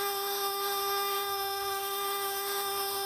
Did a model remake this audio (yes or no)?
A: yes